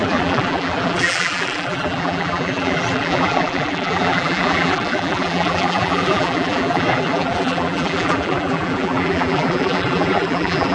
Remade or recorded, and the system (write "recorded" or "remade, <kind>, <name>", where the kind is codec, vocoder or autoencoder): remade, vocoder, BigVGAN v2